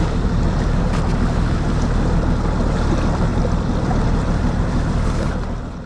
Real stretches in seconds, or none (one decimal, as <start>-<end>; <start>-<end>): 0.0-3.3; 5.3-5.9